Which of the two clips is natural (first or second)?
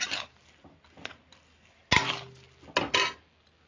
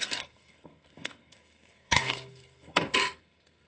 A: first